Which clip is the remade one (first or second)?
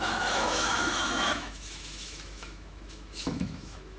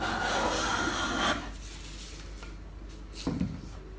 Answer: first